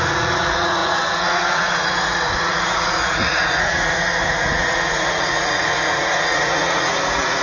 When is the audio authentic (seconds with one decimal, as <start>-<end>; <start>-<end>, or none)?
none